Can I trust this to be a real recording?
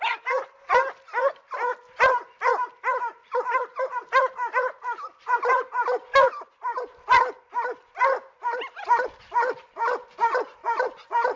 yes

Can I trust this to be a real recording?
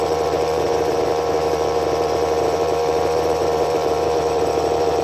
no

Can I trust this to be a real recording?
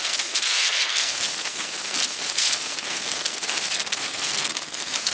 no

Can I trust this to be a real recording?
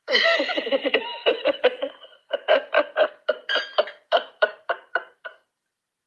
no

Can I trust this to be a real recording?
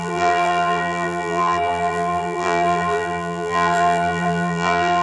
no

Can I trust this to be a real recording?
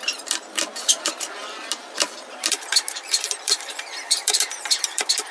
no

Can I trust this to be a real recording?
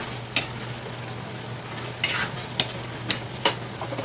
yes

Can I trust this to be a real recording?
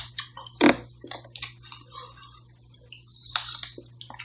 yes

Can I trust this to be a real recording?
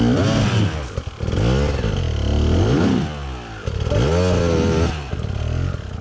yes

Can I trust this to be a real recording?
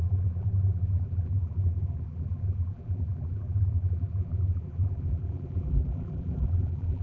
no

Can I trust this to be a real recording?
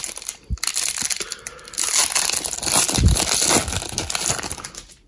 yes